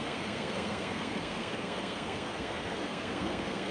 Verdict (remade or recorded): remade